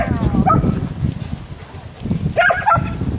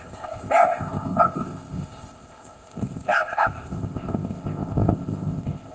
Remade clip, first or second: second